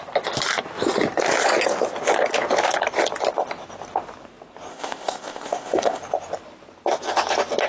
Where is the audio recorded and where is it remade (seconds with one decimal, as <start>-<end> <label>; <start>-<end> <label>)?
0.0-4.7 recorded; 4.7-6.0 remade; 6.0-7.7 recorded